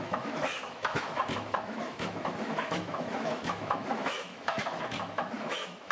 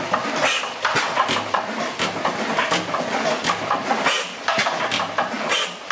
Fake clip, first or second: first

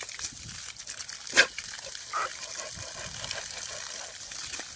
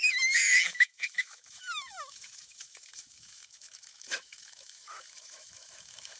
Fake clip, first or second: second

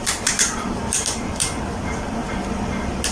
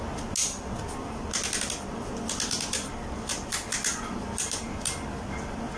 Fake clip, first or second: first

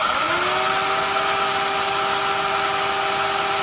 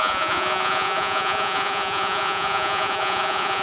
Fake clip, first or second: second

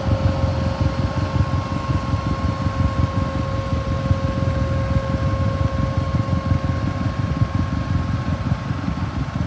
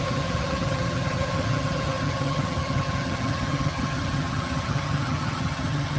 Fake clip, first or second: second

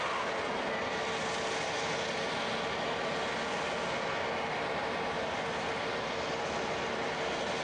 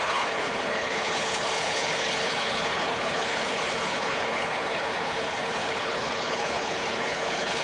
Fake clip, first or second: second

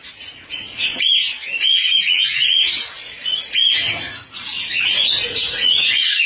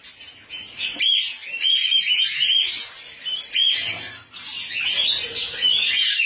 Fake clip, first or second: first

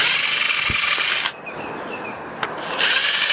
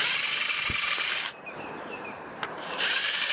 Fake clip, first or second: second